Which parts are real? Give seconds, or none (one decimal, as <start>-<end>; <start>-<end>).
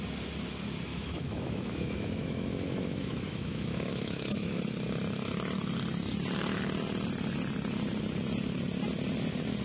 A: 0.0-0.9; 4.6-9.6